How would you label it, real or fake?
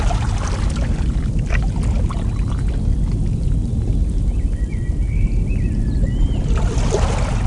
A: real